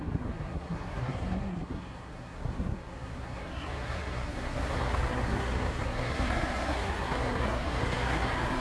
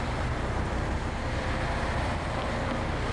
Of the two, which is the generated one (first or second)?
first